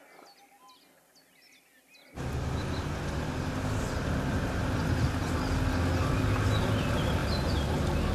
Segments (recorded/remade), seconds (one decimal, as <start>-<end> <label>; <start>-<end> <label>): 0.0-8.1 recorded